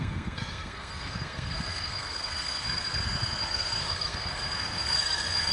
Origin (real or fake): fake